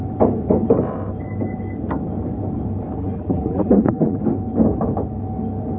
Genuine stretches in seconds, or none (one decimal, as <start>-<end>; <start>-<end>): 0.0-3.0; 4.2-5.8